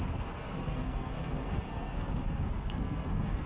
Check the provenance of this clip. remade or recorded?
remade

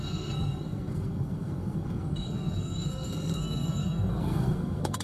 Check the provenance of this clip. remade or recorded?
remade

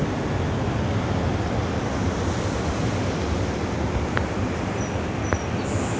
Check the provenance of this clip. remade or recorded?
recorded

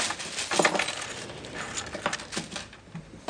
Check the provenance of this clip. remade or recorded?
recorded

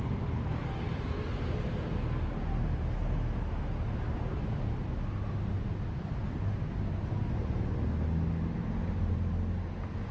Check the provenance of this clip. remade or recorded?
recorded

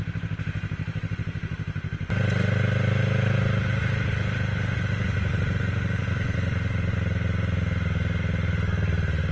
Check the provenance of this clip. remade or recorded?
recorded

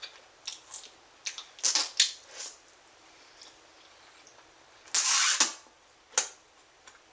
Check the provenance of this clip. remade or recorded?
recorded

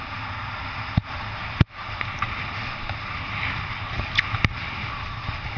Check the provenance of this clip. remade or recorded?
recorded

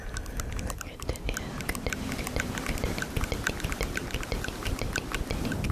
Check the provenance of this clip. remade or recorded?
recorded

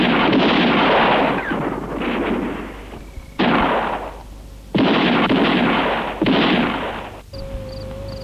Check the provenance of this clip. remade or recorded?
recorded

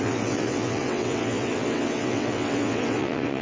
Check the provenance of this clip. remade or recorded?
remade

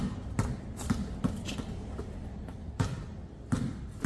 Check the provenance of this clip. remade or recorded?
recorded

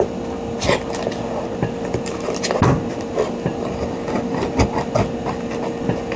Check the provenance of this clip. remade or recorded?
recorded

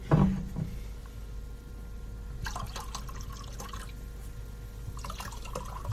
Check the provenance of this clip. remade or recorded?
recorded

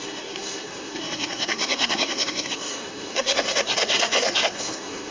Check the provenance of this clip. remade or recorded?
remade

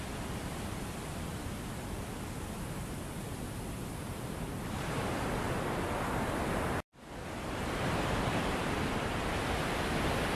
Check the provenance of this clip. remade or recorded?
recorded